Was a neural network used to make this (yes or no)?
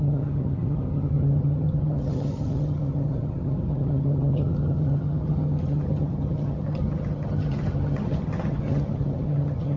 yes